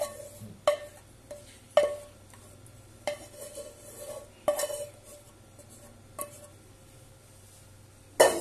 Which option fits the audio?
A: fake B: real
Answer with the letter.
B